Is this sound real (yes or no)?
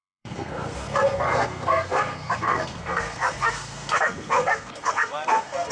no